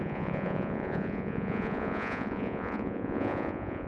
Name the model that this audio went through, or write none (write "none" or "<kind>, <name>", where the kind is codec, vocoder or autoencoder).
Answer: vocoder, Vocos